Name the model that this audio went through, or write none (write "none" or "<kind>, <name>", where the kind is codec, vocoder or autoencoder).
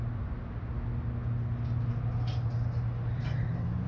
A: none